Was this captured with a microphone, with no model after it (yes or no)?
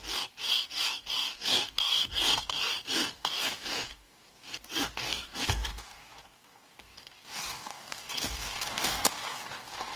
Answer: no